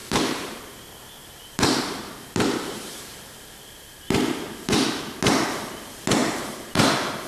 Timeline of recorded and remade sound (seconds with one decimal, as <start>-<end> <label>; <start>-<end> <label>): 0.0-0.6 remade; 0.6-1.2 recorded; 1.2-5.0 remade; 5.0-6.2 recorded; 6.2-6.8 remade; 6.8-7.3 recorded